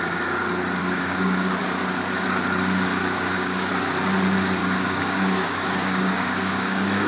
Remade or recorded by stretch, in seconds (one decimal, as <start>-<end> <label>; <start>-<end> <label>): 0.0-0.8 recorded; 0.8-1.6 remade; 1.6-3.0 recorded; 3.0-3.7 remade; 3.7-4.6 recorded; 4.6-7.1 remade